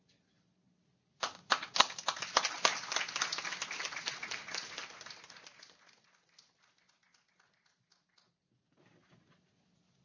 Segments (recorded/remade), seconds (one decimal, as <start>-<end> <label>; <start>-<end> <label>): 0.0-10.0 recorded